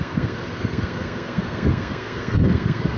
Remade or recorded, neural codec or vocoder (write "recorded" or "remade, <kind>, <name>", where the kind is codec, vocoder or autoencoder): remade, codec, SNAC